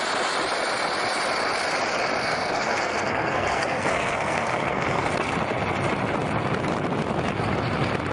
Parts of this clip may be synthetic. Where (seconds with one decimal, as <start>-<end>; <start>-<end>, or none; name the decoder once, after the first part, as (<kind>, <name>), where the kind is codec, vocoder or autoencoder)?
2.2-5.1 (codec, SNAC)